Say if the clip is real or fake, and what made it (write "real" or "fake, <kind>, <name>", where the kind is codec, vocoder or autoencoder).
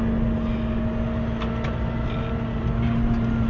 real